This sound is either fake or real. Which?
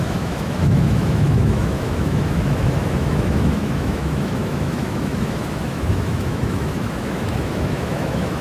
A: fake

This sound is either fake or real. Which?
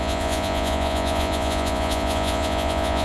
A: fake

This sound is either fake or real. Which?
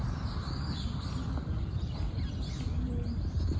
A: real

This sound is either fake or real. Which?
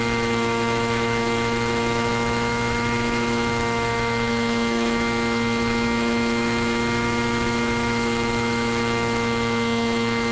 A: fake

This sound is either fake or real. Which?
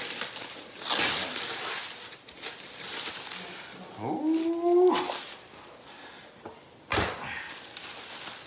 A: real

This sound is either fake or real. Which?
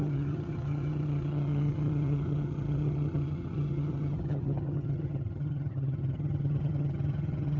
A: fake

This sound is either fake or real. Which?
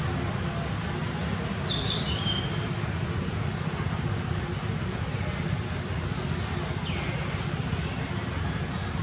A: real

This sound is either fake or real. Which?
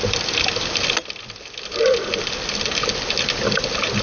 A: real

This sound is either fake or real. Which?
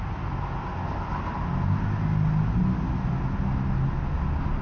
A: real